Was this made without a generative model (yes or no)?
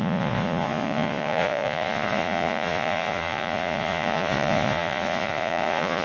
no